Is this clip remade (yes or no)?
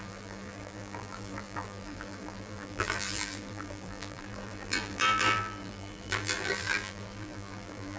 yes